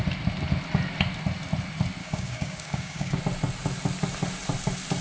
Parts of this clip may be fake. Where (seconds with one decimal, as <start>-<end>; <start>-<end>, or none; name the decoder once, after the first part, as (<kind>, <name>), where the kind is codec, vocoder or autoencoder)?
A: 2.0-3.2 (codec, DAC)